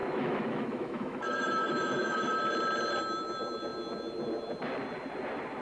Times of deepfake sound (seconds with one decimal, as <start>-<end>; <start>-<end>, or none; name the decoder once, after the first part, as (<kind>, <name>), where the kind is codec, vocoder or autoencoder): 0.0-2.4 (autoencoder, DAC-VAE)